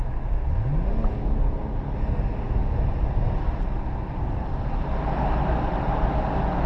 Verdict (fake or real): real